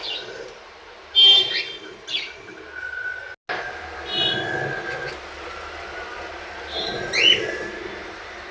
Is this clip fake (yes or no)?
no